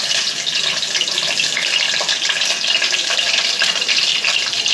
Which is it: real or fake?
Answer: real